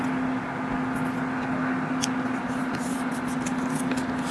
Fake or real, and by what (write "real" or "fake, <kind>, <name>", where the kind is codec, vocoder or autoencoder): real